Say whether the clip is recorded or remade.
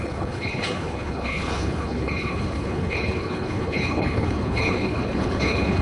remade